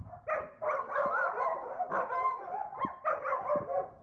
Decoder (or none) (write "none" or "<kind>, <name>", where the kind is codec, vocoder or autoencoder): none